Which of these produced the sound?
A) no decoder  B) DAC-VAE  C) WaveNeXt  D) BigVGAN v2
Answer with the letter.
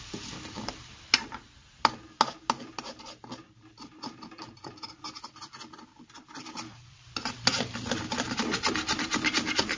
A